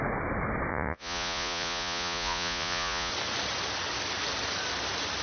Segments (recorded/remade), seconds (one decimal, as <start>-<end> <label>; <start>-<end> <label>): 0.0-0.7 recorded; 0.7-3.1 remade; 3.1-5.2 recorded